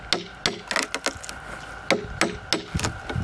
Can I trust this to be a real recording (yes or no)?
yes